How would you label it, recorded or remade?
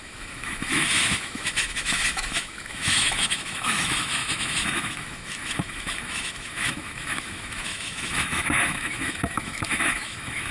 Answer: remade